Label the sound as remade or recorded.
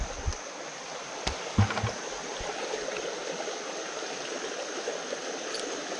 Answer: recorded